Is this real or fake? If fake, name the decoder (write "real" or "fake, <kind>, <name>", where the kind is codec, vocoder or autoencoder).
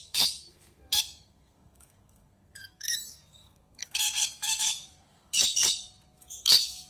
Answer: fake, codec, SNAC